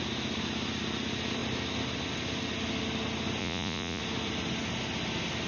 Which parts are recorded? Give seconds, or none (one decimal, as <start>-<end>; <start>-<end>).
0.0-3.4; 4.0-5.5